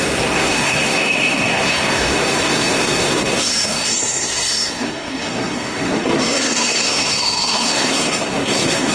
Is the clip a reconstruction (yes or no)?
yes